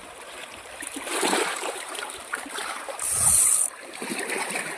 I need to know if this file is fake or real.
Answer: fake